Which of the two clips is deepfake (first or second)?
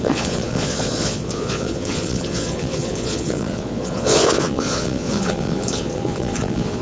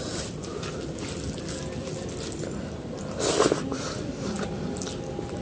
first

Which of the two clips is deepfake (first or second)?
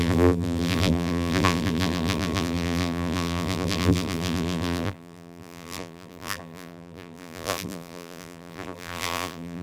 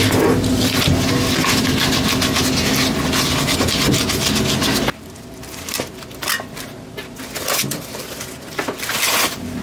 first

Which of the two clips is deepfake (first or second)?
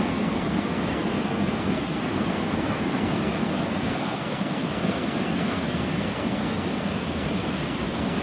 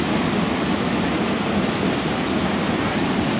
first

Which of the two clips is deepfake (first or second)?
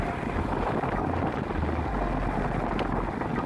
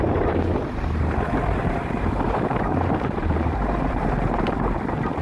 second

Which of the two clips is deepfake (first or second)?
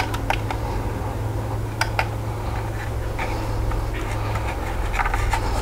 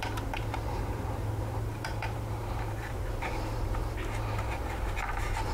second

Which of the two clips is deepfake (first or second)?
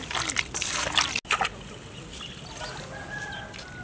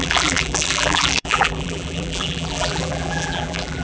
second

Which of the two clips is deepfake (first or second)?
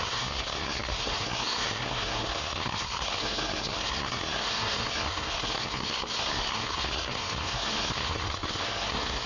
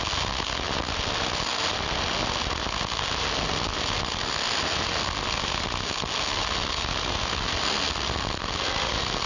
first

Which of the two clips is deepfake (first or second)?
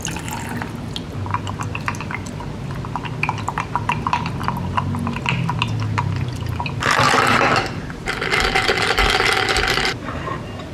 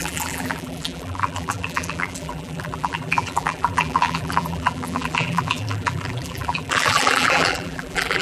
second